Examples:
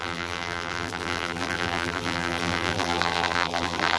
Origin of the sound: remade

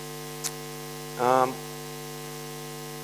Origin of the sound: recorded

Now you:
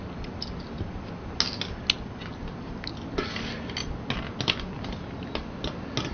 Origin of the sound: recorded